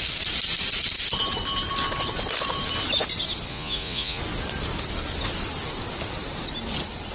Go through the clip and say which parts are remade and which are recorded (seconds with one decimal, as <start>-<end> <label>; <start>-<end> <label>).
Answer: 0.0-3.5 recorded; 3.5-4.2 remade; 4.2-7.1 recorded